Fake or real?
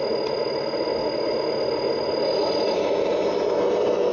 real